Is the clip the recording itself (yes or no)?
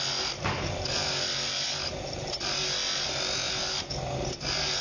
yes